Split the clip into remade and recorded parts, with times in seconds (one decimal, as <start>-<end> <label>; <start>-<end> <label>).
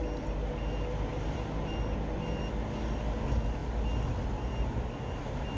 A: 0.0-5.6 recorded